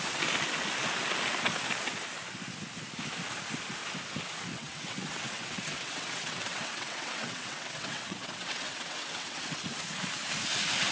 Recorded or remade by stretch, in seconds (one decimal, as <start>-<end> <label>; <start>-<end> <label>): 0.0-4.5 recorded; 4.5-9.8 remade; 9.8-10.9 recorded

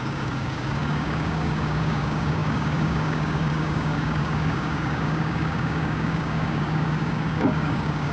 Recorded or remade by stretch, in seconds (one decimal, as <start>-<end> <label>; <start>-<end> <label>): 0.0-8.1 remade